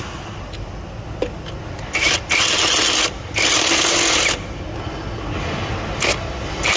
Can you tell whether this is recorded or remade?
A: recorded